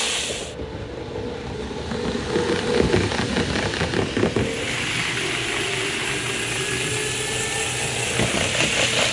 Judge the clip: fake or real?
real